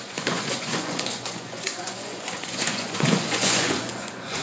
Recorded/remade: remade